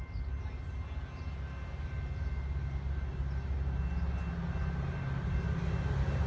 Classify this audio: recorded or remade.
recorded